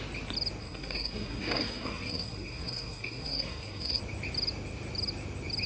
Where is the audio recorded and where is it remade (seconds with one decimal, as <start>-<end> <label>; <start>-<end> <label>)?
0.0-0.6 recorded; 0.6-4.0 remade; 4.0-5.7 recorded

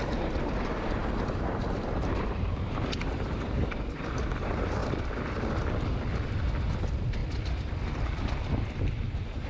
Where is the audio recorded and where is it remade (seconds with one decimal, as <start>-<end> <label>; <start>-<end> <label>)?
0.0-4.8 remade; 4.8-6.7 recorded; 6.7-7.2 remade; 7.2-8.0 recorded; 8.0-9.5 remade

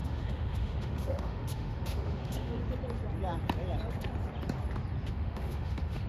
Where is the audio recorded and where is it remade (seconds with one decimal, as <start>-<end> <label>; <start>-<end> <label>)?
0.0-2.6 remade; 2.6-5.1 recorded; 5.1-6.1 remade

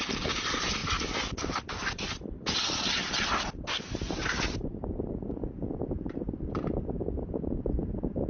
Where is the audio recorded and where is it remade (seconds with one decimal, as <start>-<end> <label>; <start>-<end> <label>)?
0.0-8.3 remade

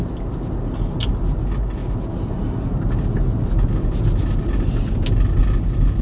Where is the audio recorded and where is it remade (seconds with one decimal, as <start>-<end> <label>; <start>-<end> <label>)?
0.0-6.0 recorded

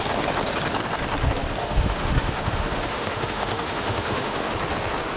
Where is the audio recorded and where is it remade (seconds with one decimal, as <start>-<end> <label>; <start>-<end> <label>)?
0.0-1.6 recorded; 1.6-4.5 remade; 4.5-5.2 recorded

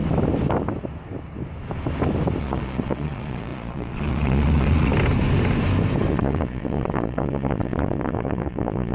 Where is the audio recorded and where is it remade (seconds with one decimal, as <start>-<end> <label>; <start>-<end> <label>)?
0.0-2.4 recorded; 2.4-4.9 remade; 4.9-6.1 recorded; 6.1-8.9 remade